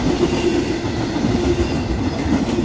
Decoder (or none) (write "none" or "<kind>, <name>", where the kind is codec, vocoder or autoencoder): none